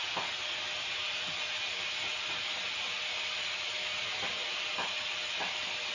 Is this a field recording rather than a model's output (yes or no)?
yes